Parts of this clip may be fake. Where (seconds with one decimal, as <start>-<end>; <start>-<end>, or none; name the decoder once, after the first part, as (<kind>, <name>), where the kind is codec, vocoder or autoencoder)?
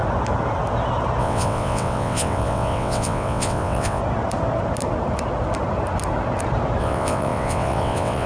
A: 1.2-4.0 (vocoder, WaveNeXt); 6.8-8.3